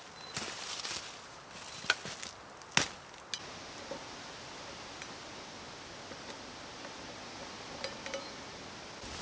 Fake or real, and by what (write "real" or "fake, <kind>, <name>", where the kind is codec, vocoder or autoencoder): real